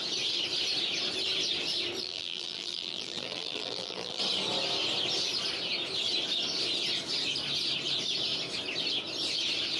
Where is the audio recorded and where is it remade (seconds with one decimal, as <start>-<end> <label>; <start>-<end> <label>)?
0.0-2.0 recorded; 2.0-4.2 remade; 4.2-9.8 recorded